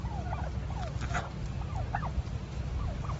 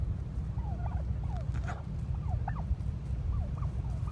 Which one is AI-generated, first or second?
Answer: second